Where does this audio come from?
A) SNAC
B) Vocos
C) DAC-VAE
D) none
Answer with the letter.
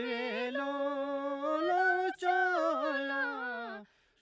D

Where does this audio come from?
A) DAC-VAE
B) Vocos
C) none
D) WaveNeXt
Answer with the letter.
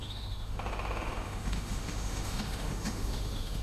A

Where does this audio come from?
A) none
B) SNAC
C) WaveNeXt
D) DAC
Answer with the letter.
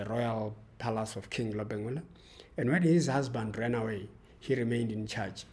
A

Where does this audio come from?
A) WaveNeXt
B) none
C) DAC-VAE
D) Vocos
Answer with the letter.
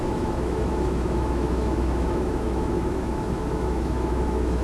C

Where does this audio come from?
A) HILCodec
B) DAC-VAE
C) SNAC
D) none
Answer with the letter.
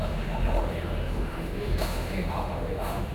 B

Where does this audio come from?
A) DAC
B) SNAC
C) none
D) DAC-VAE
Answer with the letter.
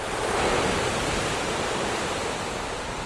C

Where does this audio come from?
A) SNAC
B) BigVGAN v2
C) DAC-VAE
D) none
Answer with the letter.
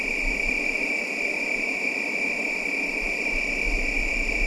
D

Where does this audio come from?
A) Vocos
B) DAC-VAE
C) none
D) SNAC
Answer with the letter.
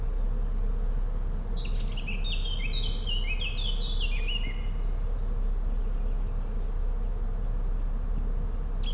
C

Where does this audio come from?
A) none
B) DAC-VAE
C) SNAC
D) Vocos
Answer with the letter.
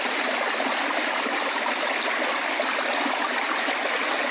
A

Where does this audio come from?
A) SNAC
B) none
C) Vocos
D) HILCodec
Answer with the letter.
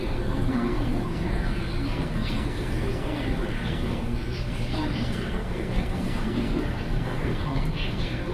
A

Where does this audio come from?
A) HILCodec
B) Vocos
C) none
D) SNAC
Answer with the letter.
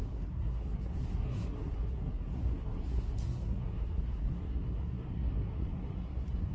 D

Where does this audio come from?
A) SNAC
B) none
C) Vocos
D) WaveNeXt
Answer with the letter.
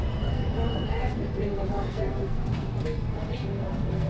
A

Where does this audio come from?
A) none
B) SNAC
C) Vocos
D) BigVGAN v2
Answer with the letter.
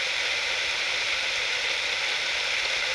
D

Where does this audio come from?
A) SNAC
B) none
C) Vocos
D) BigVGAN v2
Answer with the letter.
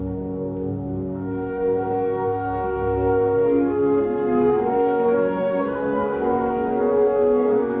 A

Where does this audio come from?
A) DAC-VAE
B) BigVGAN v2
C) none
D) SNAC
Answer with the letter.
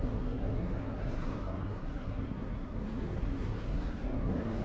D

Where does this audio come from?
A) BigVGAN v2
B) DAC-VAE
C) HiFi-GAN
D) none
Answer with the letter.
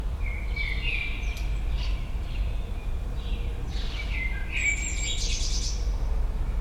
A